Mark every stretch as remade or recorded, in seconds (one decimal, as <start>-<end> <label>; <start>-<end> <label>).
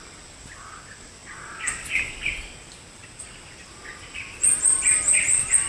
0.0-5.7 recorded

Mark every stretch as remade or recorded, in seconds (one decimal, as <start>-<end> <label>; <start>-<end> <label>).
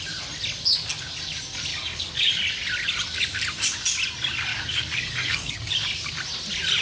0.0-1.7 recorded; 1.7-2.3 remade; 2.3-4.5 recorded; 4.5-5.7 remade; 5.7-6.8 recorded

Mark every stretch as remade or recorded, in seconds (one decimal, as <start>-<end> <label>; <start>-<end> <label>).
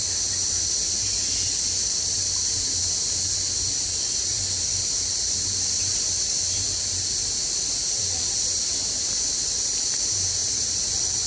0.0-10.4 recorded; 10.4-10.9 remade; 10.9-11.3 recorded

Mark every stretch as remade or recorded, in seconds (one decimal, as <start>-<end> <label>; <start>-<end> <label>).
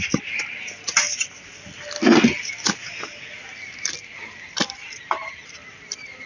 0.0-1.5 remade; 1.5-3.1 recorded; 3.1-6.3 remade